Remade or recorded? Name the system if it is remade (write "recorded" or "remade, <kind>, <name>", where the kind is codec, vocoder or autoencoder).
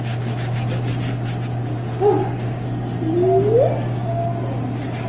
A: recorded